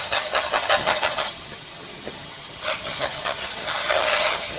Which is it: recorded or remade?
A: remade